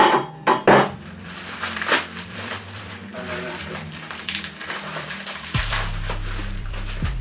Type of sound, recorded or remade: remade